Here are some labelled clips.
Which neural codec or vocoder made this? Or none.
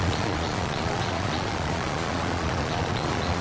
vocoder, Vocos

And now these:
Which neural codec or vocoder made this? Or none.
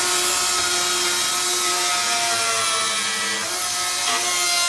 none